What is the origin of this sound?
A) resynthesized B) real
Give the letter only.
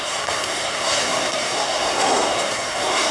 A